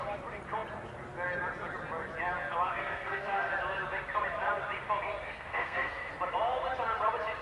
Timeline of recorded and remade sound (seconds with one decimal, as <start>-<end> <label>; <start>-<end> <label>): 0.0-2.7 recorded; 2.7-3.5 remade; 3.5-5.3 recorded; 5.3-6.1 remade; 6.1-7.4 recorded